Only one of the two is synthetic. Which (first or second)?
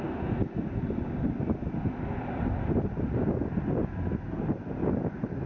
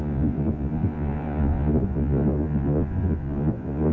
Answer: second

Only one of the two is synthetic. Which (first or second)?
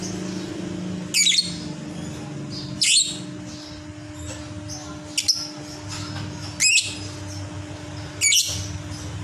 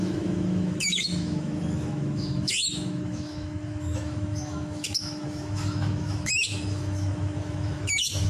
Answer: second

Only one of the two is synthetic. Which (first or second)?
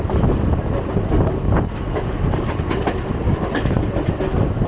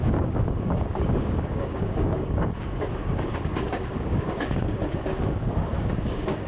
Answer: second